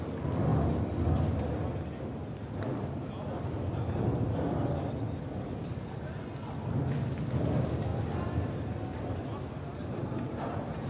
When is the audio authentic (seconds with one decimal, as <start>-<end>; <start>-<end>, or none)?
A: 0.0-10.9